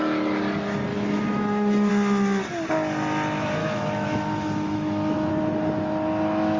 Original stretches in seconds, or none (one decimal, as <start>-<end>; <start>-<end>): 0.0-0.9; 1.9-3.6; 5.3-6.6